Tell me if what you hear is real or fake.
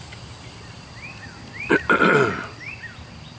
real